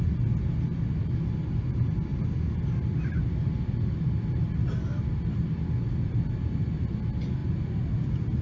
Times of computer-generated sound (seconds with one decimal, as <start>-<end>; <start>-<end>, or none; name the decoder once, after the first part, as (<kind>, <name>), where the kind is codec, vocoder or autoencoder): none